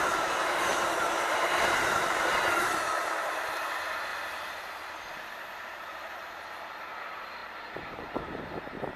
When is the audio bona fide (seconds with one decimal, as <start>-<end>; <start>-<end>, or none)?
4.1-5.4